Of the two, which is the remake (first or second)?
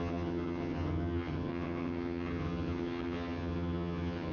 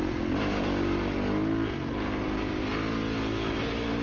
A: first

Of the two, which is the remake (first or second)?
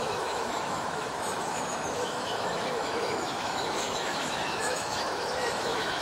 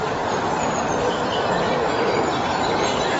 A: first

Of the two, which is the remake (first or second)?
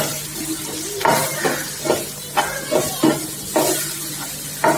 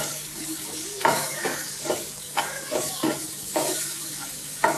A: second